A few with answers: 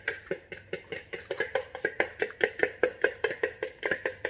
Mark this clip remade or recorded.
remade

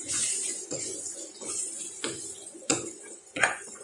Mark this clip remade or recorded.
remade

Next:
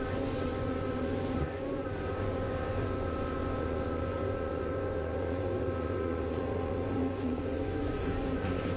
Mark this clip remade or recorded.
remade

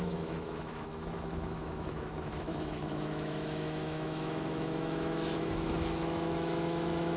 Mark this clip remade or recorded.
remade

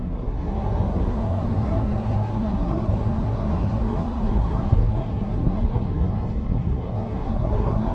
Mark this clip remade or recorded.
remade